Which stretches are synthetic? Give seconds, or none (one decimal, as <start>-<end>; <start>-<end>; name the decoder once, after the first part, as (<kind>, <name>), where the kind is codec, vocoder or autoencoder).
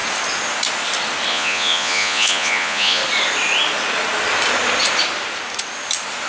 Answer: 1.3-3.0 (vocoder, Vocos)